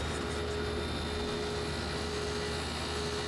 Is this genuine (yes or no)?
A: yes